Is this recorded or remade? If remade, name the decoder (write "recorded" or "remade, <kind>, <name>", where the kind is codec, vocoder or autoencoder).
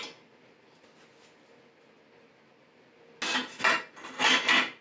recorded